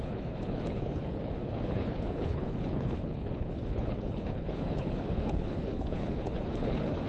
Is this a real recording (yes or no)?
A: no